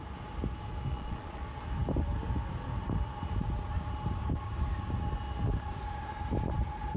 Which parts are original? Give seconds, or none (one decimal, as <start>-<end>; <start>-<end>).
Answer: 0.0-0.9; 1.4-7.0